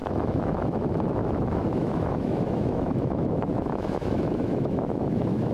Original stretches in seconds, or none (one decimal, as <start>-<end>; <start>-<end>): none